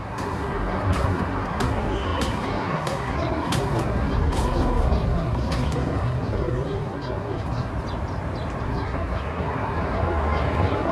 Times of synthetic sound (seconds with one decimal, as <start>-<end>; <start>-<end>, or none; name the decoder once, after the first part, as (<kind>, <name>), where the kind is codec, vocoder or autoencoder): 0.0-7.7 (codec, SNAC); 8.6-10.9